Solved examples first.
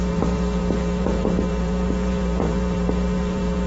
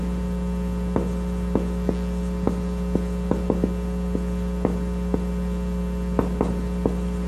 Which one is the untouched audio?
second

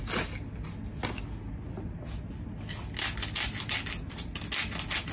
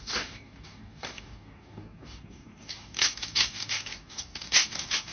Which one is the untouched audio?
first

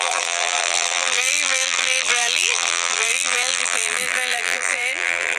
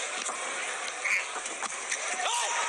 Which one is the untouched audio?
second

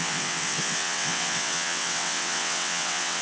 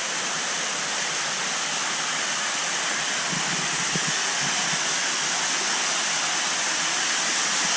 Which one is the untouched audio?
second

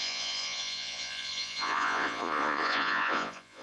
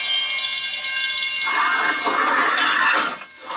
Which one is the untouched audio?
second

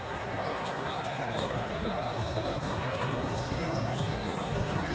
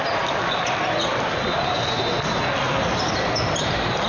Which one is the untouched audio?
second